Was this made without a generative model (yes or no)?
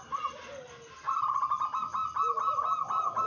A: yes